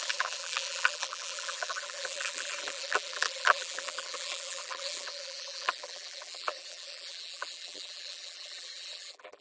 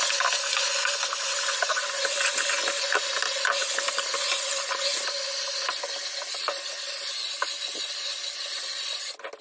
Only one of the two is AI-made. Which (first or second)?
first